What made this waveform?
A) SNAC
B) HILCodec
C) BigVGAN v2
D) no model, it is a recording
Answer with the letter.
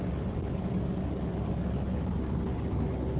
D